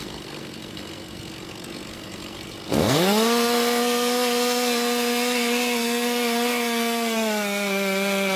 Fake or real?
fake